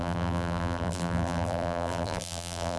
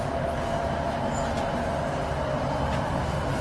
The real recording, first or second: second